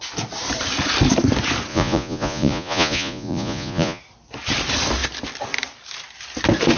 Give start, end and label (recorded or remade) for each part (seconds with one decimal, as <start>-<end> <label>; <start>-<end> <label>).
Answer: 0.0-1.7 recorded; 1.7-4.0 remade; 4.0-6.8 recorded